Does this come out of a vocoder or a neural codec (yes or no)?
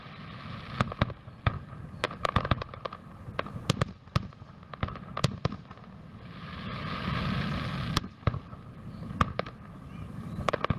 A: no